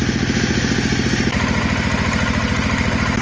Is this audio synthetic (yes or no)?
no